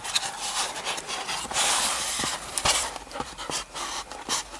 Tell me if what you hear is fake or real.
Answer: real